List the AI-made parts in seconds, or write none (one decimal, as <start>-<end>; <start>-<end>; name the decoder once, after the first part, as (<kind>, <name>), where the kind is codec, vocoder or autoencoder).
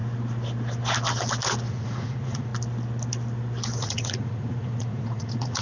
1.7-2.5 (vocoder, Vocos); 3.8-5.6